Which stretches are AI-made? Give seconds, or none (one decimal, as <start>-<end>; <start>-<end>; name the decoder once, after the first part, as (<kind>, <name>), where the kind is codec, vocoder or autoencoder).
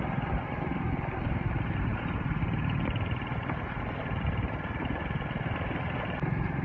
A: none